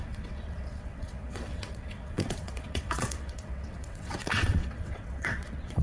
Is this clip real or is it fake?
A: fake